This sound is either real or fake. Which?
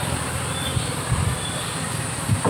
fake